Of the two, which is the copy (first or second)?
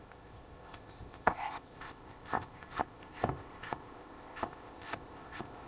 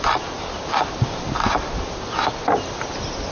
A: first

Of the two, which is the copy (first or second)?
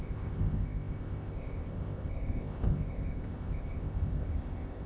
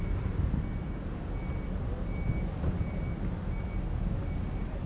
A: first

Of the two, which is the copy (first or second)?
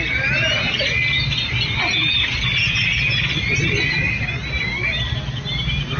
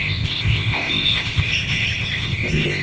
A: second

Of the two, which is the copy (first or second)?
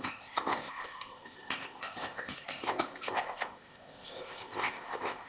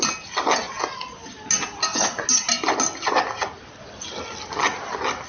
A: first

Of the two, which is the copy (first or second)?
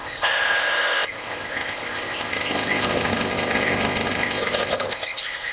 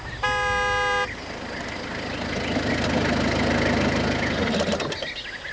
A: first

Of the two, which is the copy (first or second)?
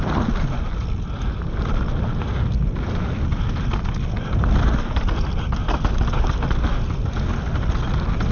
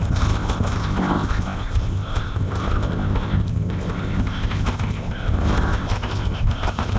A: second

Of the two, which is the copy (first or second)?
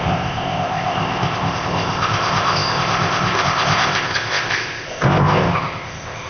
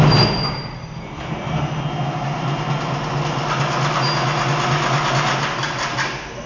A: first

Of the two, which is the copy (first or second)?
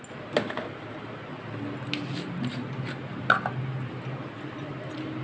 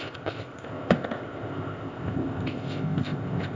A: second